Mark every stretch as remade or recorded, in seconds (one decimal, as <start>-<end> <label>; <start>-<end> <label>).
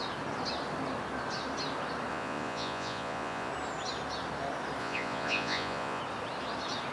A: 0.0-2.1 recorded; 2.1-3.5 remade; 3.5-4.8 recorded; 4.8-6.0 remade; 6.0-6.9 recorded